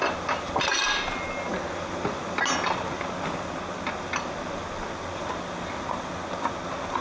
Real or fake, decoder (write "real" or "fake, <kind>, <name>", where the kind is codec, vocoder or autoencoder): real